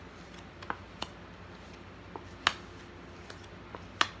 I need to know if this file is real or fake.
real